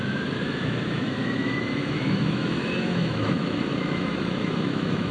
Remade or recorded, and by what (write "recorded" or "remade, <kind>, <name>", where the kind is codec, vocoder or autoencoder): remade, autoencoder, DAC-VAE